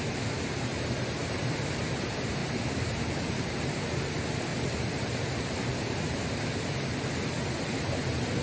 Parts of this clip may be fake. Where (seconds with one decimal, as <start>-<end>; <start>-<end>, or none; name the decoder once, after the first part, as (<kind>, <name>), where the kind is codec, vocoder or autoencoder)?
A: 1.2-1.8 (vocoder, BigVGAN v2); 2.4-3.5; 4.5-6.3